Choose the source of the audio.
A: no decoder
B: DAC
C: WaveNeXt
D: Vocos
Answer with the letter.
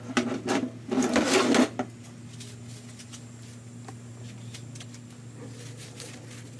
A